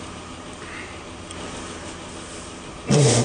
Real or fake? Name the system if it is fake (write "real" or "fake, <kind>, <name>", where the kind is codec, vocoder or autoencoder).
real